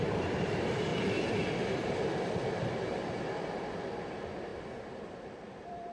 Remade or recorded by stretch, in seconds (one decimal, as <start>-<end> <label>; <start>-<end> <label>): 0.0-0.9 remade; 0.9-3.9 recorded; 3.9-5.9 remade